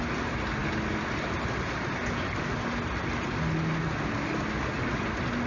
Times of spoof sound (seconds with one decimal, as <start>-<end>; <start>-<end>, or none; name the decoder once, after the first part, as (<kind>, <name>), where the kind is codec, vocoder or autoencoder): none